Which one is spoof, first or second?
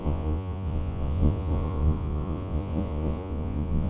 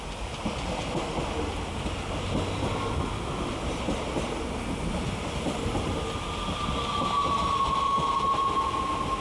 first